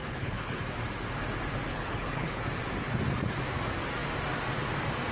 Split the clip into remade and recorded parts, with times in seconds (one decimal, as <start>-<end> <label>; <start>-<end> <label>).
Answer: 0.0-0.6 remade; 0.6-1.7 recorded; 1.7-2.4 remade; 2.4-5.1 recorded